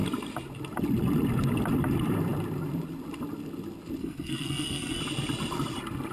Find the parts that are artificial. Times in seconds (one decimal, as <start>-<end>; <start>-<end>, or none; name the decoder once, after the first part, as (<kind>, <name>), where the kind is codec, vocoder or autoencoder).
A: 4.0-5.0 (codec, SNAC)